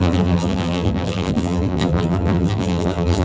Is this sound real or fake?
fake